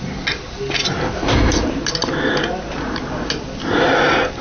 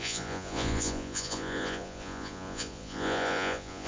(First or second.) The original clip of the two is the first